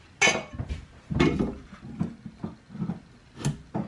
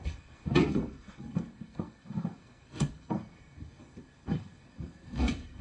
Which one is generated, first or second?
second